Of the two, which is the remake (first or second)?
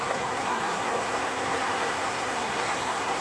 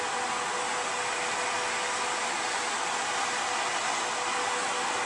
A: first